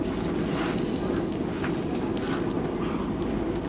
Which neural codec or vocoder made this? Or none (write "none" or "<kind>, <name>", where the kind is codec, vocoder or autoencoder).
none